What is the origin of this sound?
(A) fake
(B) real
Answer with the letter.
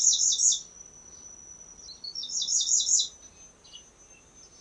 B